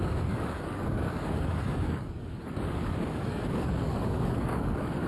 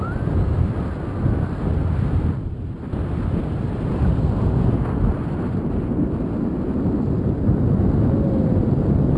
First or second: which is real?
second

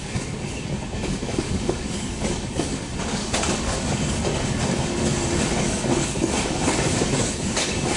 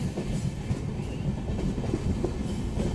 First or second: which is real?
second